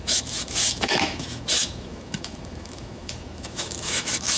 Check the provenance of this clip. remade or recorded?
remade